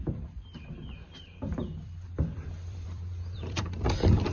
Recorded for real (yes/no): no